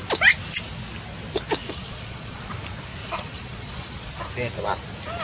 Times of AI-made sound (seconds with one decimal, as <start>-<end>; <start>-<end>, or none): 1.6-2.5; 3.0-4.1